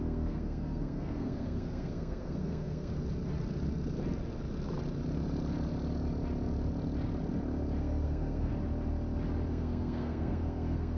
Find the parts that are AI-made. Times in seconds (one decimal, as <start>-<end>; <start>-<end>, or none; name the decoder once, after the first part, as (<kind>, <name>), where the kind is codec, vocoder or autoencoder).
0.0-2.9 (codec, SNAC); 7.8-8.5; 9.5-11.0